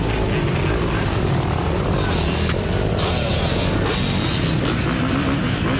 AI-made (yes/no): no